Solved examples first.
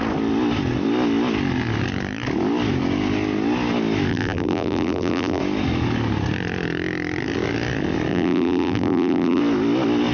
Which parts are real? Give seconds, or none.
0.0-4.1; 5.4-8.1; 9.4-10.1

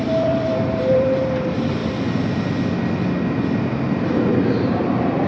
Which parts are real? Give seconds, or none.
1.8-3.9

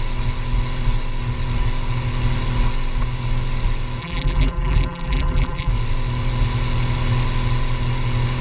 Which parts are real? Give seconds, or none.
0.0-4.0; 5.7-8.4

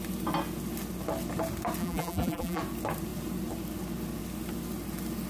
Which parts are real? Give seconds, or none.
0.0-1.8; 2.6-5.3